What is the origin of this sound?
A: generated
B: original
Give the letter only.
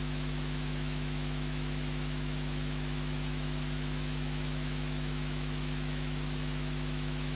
A